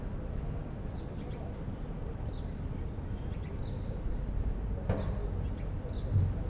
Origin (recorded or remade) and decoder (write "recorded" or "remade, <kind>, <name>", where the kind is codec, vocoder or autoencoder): recorded